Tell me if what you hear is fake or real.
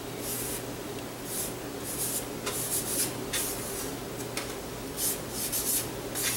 real